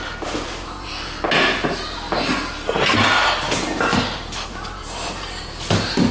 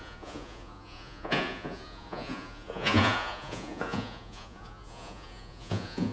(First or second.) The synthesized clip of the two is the second